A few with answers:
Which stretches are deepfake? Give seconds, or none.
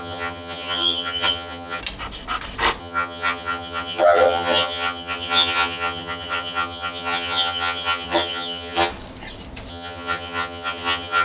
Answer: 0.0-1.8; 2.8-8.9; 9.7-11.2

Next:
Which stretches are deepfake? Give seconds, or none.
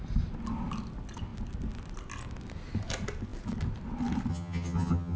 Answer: 4.3-5.2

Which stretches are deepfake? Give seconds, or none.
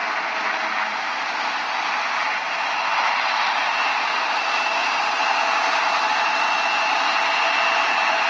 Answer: none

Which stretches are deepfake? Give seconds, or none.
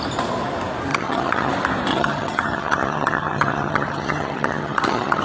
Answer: 0.9-1.5; 1.9-5.2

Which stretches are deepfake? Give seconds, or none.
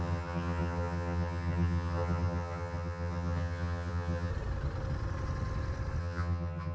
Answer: 0.0-4.3; 6.0-6.7